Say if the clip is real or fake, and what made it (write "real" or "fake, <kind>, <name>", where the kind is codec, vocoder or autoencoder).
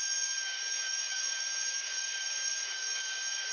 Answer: fake, codec, DAC